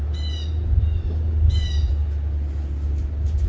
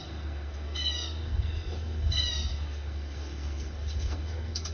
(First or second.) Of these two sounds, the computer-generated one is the second